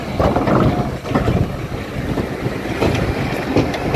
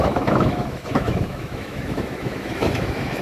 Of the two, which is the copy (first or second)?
second